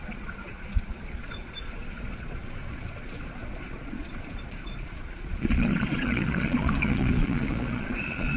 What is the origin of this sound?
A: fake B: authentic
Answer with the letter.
A